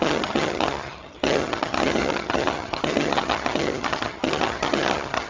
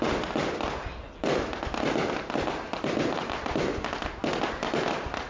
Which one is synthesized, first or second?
first